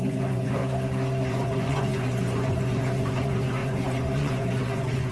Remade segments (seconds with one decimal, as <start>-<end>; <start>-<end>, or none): 0.0-0.6; 1.3-5.1